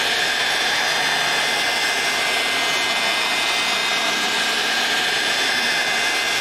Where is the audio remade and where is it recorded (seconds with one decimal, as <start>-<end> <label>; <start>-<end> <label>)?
0.0-6.4 recorded